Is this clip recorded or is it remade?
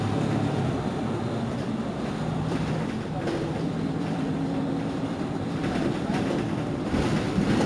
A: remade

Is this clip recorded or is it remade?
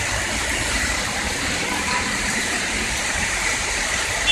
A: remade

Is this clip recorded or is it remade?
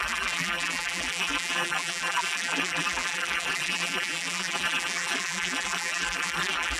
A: remade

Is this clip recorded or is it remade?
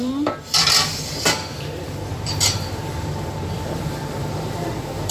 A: remade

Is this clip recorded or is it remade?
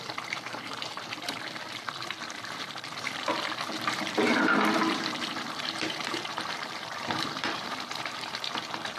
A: remade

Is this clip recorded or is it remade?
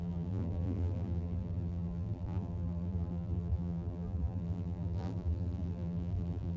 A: remade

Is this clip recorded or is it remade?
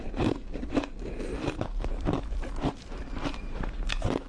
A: remade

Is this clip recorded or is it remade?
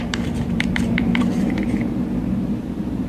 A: remade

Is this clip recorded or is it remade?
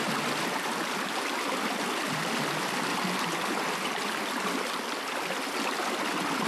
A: recorded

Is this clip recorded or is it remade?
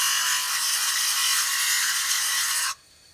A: recorded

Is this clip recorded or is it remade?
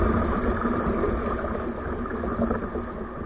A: recorded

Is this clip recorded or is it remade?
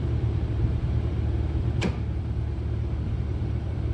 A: remade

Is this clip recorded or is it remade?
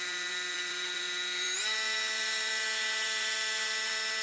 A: remade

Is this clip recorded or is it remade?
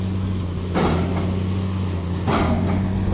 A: recorded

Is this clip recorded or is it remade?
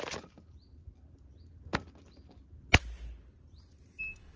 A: recorded